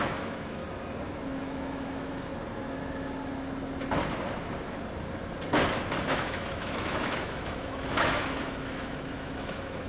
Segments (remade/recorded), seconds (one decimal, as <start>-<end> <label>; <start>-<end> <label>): 0.0-0.6 remade; 0.6-1.4 recorded; 1.4-2.3 remade; 2.3-6.0 recorded; 6.0-9.9 remade